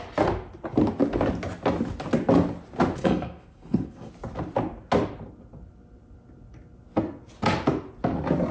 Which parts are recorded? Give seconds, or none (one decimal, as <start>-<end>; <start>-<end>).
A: 0.0-3.0; 4.1-8.5